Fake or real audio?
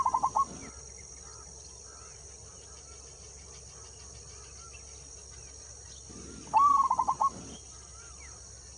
real